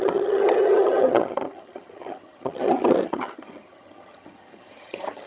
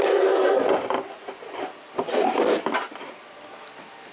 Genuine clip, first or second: second